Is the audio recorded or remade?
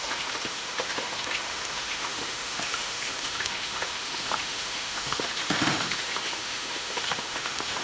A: remade